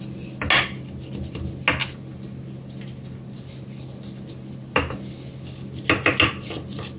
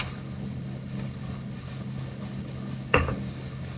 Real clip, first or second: first